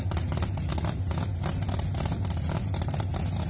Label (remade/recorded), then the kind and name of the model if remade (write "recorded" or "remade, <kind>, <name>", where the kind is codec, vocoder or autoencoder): recorded